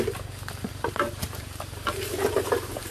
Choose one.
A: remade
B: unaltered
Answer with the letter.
B